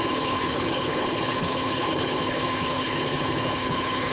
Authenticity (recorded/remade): remade